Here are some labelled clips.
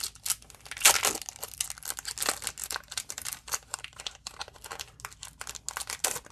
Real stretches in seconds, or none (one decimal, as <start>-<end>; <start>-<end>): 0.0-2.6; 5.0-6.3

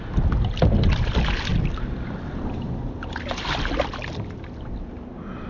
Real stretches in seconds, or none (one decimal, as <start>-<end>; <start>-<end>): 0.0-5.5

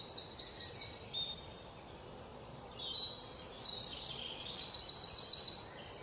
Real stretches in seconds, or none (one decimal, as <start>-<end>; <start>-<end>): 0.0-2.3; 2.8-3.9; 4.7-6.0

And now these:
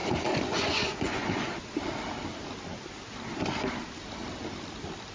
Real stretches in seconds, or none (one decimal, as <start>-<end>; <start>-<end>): 1.6-5.1

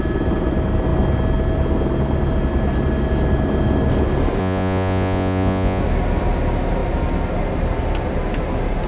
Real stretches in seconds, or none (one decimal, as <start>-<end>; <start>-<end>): 0.0-4.4; 5.8-8.9

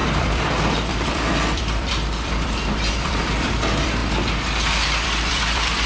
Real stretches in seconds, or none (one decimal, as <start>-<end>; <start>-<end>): 4.0-4.7

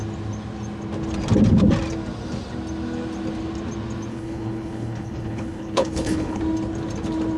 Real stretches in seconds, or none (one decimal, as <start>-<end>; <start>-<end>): 0.0-4.1; 6.4-7.4